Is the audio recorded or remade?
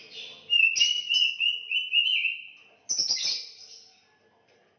recorded